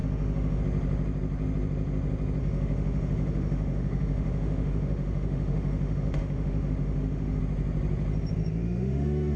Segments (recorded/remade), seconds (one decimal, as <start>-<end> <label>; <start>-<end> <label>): 0.0-0.6 remade; 0.6-2.4 recorded; 2.4-7.4 remade; 7.4-8.6 recorded; 8.6-9.4 remade

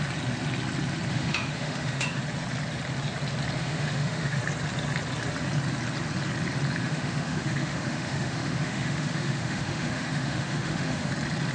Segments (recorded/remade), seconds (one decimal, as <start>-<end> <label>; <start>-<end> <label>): 0.0-1.1 recorded; 1.1-2.2 remade; 2.2-3.6 recorded; 3.6-4.4 remade; 4.4-6.8 recorded; 6.8-11.1 remade; 11.1-11.5 recorded

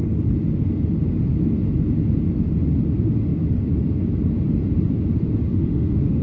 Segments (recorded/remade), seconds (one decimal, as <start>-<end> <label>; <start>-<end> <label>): 0.0-5.5 recorded; 5.5-6.2 remade

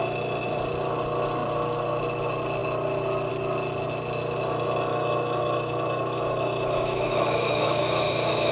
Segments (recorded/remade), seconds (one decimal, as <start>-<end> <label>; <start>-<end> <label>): 0.0-4.9 recorded; 4.9-8.5 remade

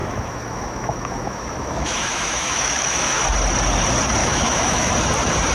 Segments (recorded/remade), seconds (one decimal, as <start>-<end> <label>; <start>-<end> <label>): 0.0-3.2 remade; 3.2-4.2 recorded; 4.2-4.9 remade; 4.9-5.5 recorded

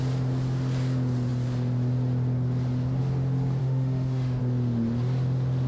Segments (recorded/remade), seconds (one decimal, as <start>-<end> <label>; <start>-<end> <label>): 0.0-3.6 recorded; 3.6-4.4 remade; 4.4-5.7 recorded